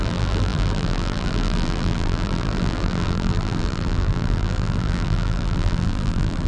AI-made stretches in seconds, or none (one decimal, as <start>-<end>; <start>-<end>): 0.0-6.5